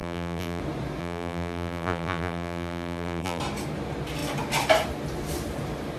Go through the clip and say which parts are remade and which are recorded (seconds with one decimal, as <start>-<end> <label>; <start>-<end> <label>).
0.0-0.6 remade; 0.6-1.0 recorded; 1.0-3.4 remade; 3.4-6.0 recorded